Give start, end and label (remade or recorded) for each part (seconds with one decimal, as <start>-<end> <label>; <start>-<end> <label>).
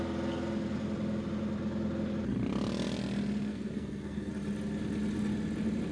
0.0-3.5 recorded; 3.5-4.3 remade; 4.3-5.9 recorded